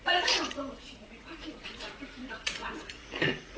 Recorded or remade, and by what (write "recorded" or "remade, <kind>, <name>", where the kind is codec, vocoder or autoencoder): remade, vocoder, Vocos